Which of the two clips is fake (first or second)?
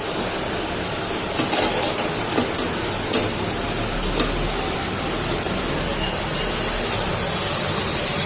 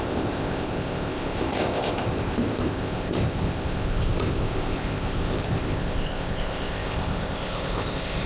second